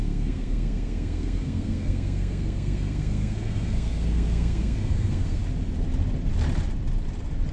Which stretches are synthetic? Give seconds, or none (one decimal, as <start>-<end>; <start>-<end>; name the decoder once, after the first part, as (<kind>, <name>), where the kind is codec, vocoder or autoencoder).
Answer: 0.0-5.4 (codec, SNAC)